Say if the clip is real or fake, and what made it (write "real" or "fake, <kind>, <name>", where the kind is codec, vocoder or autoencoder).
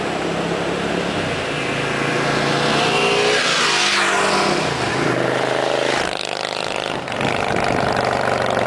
real